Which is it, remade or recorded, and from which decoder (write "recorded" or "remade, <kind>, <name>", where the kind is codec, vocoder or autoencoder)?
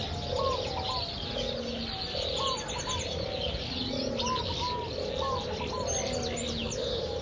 recorded